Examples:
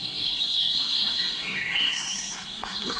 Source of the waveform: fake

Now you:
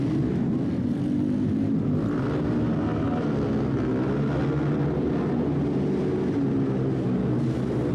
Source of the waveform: real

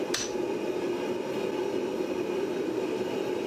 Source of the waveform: real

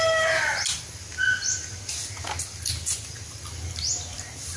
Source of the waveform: real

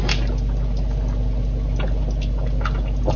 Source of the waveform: real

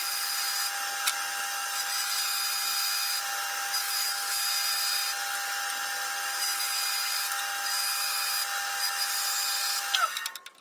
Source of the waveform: real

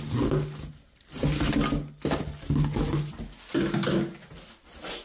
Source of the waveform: real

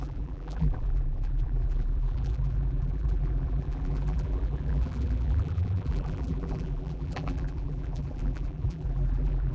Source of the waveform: fake